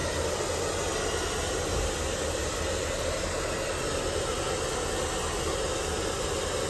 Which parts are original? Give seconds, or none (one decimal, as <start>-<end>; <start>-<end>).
0.0-2.4; 4.9-6.7